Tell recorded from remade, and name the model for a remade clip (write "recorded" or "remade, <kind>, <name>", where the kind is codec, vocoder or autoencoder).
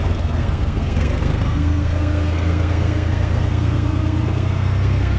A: remade, codec, SNAC